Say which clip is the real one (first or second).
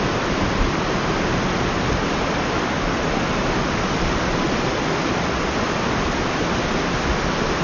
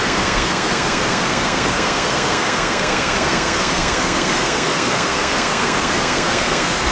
first